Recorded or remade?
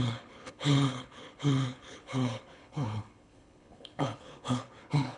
remade